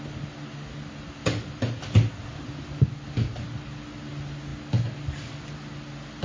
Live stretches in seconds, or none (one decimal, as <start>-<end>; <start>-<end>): 0.0-6.2